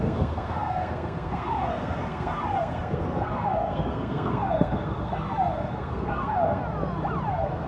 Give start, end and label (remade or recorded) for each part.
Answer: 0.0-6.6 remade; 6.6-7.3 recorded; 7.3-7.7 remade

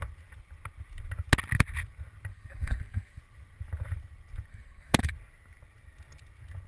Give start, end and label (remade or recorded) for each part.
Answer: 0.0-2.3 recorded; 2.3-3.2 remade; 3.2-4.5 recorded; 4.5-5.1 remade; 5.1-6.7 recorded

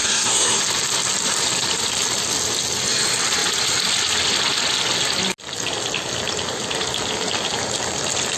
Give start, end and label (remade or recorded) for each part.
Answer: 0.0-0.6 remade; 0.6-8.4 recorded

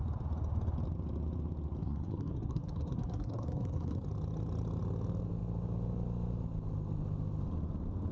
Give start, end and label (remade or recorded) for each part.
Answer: 0.0-1.8 recorded; 1.8-4.0 remade; 4.0-8.1 recorded

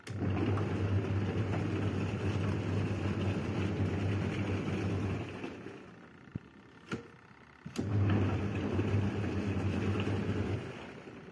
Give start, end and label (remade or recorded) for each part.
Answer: 0.0-11.3 recorded

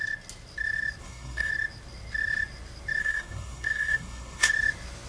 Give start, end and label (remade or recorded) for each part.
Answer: 0.0-1.0 recorded; 1.0-1.5 remade; 1.5-3.0 recorded; 3.0-4.5 remade; 4.5-5.1 recorded

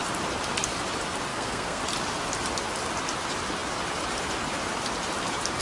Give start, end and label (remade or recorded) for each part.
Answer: 0.0-1.3 recorded; 1.3-1.8 remade; 1.8-5.6 recorded

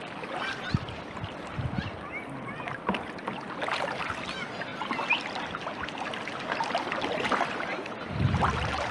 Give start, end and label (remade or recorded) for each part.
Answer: 0.0-8.9 recorded